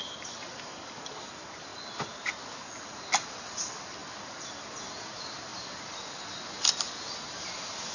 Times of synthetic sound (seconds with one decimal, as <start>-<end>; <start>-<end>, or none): 0.0-1.7; 3.3-5.5; 7.4-7.9